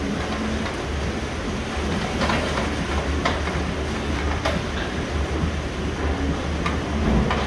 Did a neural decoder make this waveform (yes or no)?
no